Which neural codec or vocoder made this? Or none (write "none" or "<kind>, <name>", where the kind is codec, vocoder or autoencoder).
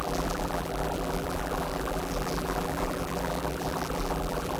vocoder, BigVGAN v2